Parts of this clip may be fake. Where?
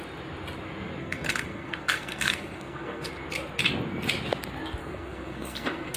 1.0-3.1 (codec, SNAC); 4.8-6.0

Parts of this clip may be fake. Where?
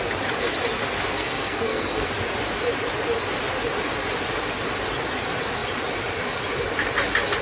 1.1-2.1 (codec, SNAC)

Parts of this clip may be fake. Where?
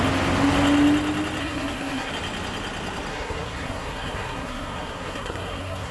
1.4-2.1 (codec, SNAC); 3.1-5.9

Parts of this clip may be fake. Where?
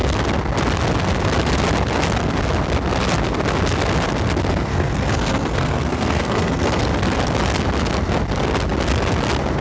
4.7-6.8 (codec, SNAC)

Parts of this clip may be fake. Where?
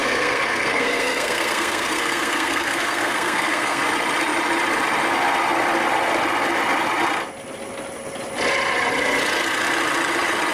0.0-3.8 (codec, SNAC)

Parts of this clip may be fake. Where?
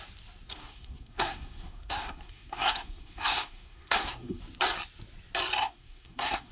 0.5-4.4 (codec, SNAC); 5.6-6.5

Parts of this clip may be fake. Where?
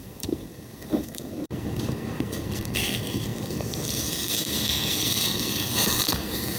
0.0-6.6 (codec, SNAC)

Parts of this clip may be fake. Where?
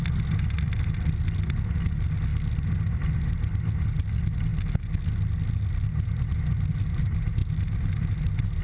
none